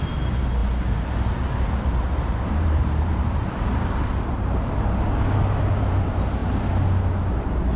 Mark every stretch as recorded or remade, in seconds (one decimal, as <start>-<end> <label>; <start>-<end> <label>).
0.0-0.6 recorded; 0.6-4.7 remade; 4.7-7.8 recorded